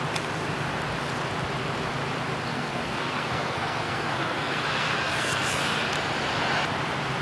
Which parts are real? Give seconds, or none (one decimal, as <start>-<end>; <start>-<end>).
0.0-2.5; 5.6-7.2